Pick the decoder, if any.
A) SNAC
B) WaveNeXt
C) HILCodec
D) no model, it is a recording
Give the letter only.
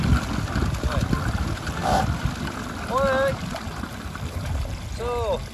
D